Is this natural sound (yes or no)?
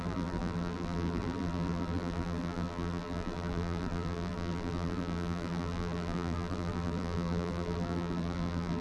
no